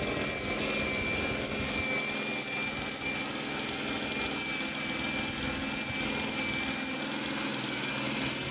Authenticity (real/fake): real